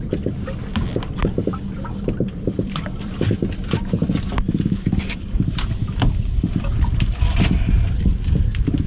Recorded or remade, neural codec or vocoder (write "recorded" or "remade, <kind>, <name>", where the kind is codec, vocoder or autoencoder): remade, vocoder, BigVGAN v2